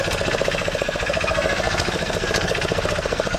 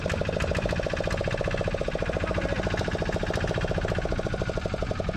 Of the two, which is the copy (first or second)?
first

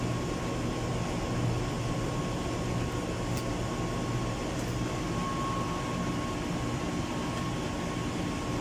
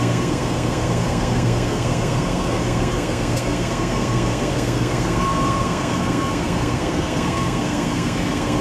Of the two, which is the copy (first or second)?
second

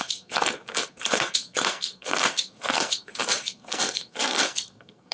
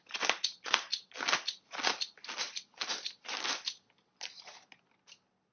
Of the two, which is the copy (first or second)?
first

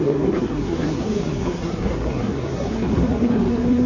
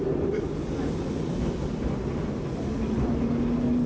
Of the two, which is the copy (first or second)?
first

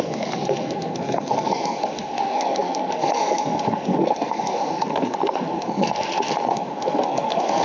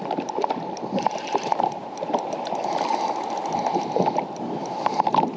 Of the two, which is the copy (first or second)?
first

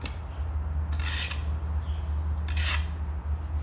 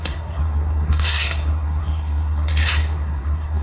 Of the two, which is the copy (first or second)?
second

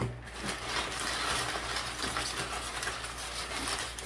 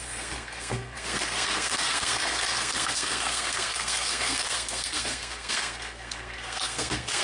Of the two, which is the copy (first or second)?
second